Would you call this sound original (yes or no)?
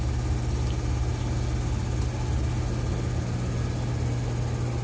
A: yes